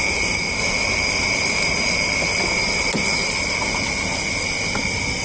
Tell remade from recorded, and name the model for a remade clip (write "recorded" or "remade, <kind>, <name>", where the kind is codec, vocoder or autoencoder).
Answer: recorded